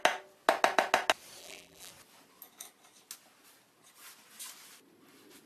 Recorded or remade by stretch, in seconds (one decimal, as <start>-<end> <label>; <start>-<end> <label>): 0.0-1.4 recorded; 1.4-1.9 remade; 1.9-5.5 recorded